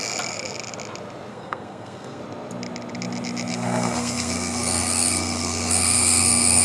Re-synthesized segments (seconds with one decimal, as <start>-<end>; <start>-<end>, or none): 1.3-2.2; 3.5-6.6